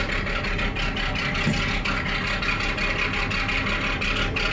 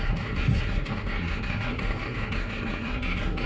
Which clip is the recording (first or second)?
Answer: first